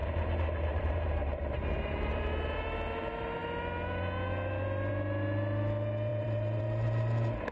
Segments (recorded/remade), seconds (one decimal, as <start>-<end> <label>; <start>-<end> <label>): 0.0-2.2 remade; 2.2-6.1 recorded; 6.1-6.6 remade; 6.6-7.5 recorded